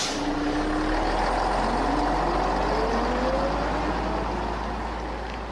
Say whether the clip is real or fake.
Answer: real